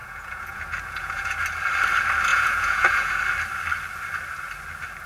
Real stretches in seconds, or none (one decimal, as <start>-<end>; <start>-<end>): 1.4-2.3; 3.1-5.1

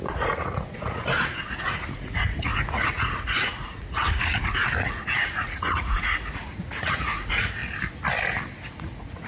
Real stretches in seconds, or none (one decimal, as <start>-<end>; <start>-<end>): 7.6-8.7

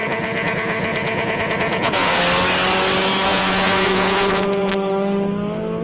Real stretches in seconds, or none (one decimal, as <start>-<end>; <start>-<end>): 2.2-3.3; 4.7-5.8

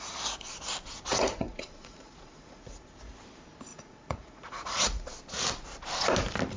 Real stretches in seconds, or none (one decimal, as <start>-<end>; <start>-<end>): 0.0-1.1; 3.1-3.7; 5.1-6.6